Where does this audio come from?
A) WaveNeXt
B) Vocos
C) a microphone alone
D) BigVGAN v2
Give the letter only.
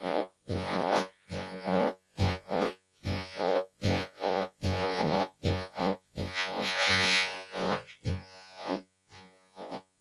B